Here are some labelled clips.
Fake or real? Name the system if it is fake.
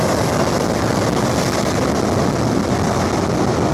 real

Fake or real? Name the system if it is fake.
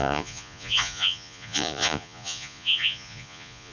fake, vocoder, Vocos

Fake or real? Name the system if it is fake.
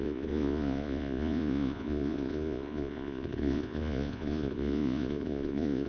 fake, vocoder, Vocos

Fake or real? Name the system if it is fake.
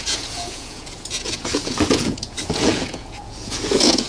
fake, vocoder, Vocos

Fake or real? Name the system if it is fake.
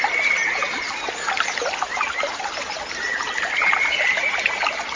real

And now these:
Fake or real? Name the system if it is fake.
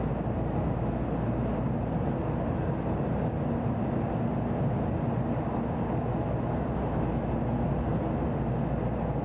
real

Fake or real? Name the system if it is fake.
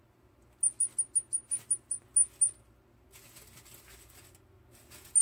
real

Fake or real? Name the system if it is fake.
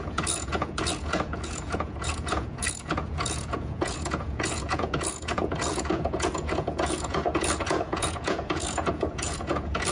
fake, vocoder, Vocos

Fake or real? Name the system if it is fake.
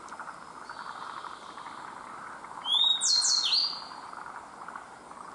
real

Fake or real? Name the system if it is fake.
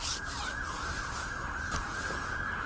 real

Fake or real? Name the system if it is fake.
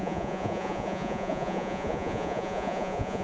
fake, vocoder, Vocos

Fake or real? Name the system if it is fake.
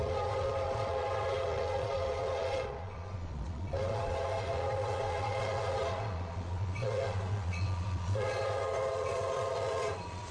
fake, vocoder, Vocos